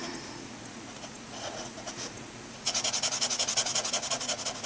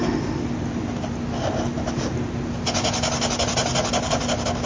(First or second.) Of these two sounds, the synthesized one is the first